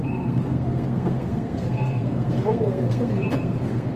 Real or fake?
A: fake